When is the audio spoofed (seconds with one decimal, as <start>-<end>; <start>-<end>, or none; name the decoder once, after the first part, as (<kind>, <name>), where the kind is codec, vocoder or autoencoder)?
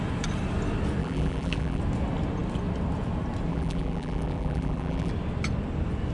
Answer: 1.0-1.8 (vocoder, BigVGAN v2); 3.5-5.1